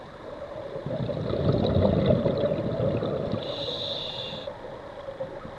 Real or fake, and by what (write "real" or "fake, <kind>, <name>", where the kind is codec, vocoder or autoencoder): real